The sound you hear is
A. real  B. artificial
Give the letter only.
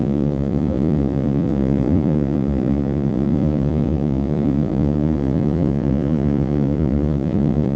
B